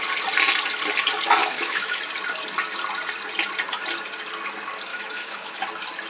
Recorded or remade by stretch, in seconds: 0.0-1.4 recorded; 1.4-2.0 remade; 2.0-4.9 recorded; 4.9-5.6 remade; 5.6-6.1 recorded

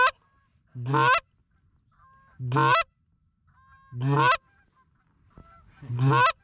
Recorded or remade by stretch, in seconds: 0.0-6.4 recorded

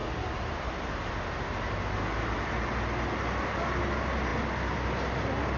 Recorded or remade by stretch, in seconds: 0.0-5.6 recorded

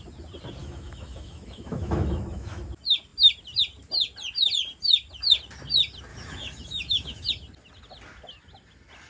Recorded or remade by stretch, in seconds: 0.0-0.6 recorded; 0.6-2.6 remade; 2.6-6.1 recorded; 6.1-7.3 remade; 7.3-9.1 recorded

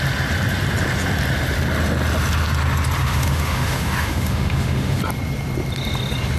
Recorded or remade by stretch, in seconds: 0.0-3.0 recorded; 3.0-5.0 remade; 5.0-6.4 recorded

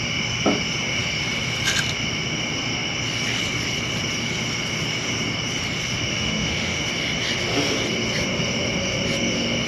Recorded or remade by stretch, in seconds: 0.0-6.1 recorded; 6.1-6.9 remade; 6.9-9.7 recorded